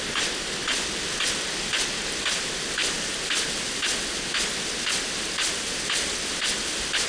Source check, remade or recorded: recorded